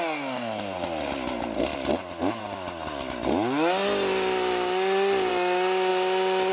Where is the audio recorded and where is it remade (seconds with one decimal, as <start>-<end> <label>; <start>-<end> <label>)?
0.0-6.5 recorded